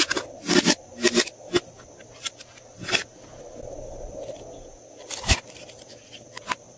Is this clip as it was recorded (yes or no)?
yes